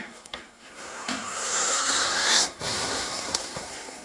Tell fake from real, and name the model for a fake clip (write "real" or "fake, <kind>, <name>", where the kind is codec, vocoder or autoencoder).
fake, codec, SNAC